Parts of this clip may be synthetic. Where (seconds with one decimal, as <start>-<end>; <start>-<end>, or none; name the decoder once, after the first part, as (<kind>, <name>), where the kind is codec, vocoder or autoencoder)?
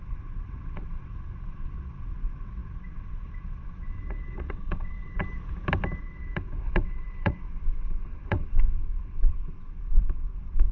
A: 0.0-5.2 (vocoder, WaveNeXt); 6.0-10.7